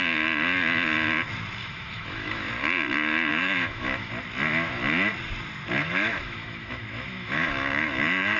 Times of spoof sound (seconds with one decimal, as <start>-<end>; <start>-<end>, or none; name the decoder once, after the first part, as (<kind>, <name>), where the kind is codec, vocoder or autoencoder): 1.6-2.5 (autoencoder, DAC-VAE); 3.3-4.1; 5.8-8.4